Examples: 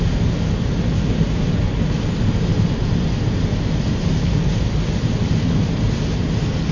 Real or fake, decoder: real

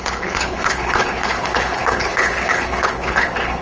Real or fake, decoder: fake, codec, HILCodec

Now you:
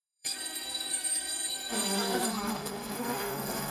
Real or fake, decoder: fake, codec, SNAC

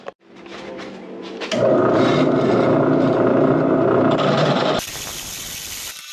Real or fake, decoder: fake, vocoder, BigVGAN v2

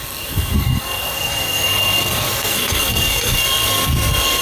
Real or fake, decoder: fake, codec, SNAC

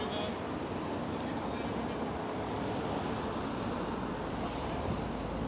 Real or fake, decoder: real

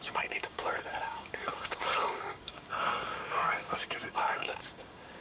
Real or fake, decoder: fake, codec, DAC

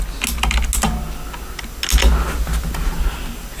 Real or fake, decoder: real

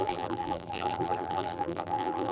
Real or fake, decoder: fake, vocoder, BigVGAN v2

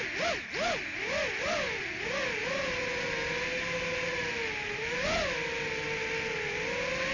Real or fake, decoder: real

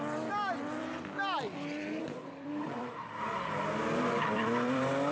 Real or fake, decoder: fake, vocoder, BigVGAN v2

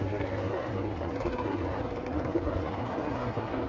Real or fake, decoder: fake, codec, SNAC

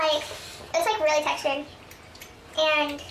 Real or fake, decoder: real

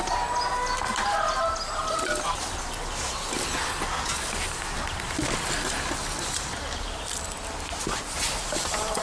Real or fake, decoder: real